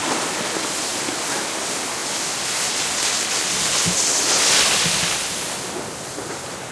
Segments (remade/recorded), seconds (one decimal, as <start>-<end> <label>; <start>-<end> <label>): 0.0-6.7 recorded